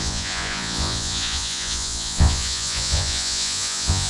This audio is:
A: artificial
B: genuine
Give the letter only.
A